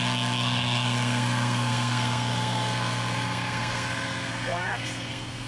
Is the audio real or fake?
fake